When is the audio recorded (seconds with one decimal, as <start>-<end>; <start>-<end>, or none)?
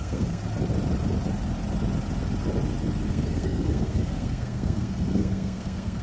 0.4-3.1